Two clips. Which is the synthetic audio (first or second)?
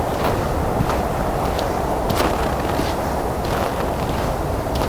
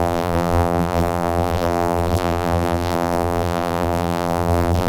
second